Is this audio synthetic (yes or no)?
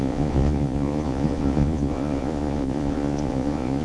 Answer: yes